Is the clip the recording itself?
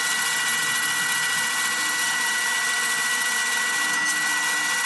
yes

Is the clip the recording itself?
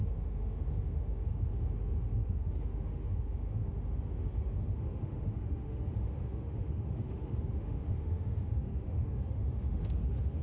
no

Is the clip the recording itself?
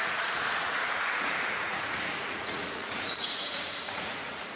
no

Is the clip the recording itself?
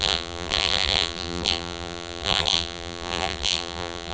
no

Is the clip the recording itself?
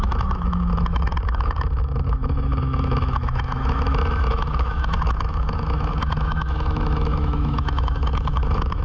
no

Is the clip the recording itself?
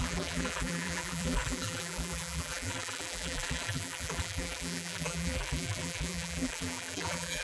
no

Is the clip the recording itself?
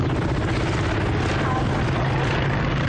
yes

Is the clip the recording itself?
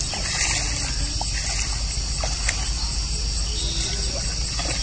yes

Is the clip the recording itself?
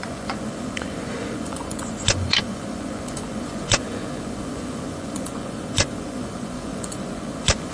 no